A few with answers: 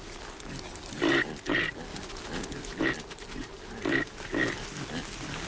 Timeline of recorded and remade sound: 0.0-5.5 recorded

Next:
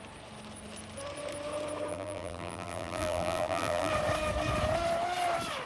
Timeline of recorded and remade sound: 0.0-1.9 recorded; 1.9-3.9 remade; 3.9-5.7 recorded

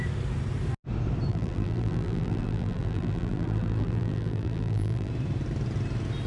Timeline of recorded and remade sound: 0.0-1.3 recorded; 1.3-5.1 remade; 5.1-6.3 recorded

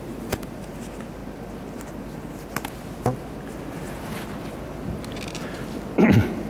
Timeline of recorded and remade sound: 0.0-6.5 recorded

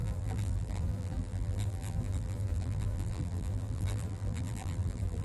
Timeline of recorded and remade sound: 0.0-5.2 remade

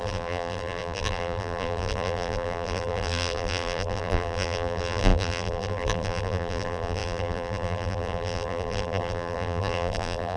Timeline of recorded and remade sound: 0.0-10.4 remade